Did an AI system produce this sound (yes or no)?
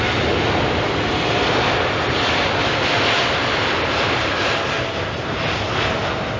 no